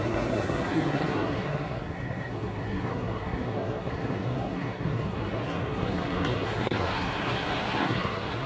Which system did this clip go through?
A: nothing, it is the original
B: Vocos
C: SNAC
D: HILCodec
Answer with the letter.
C